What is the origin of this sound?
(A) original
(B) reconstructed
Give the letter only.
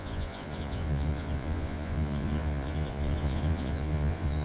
B